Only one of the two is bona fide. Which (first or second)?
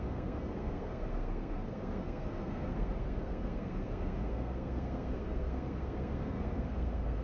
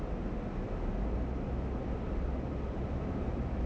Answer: second